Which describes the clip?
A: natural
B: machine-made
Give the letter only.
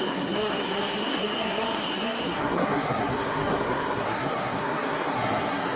B